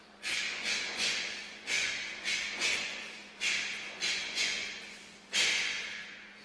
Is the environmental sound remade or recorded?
remade